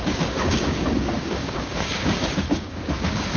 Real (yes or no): no